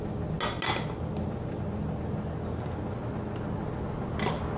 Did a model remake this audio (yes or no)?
no